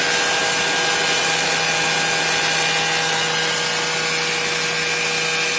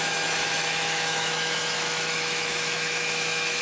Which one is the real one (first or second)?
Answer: first